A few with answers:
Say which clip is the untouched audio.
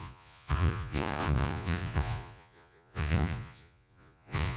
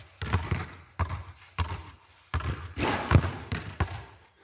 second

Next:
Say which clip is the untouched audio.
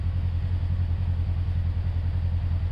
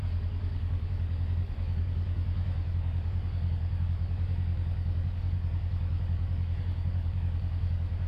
first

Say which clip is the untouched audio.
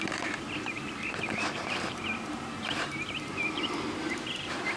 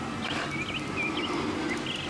second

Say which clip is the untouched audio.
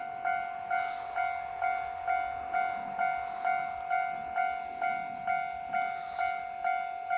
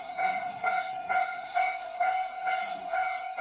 first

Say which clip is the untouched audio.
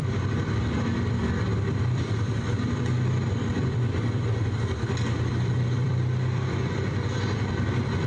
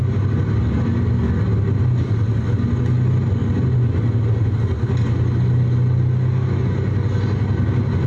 second